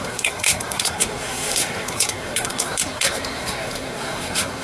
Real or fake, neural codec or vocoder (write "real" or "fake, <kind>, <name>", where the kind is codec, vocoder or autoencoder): fake, codec, SNAC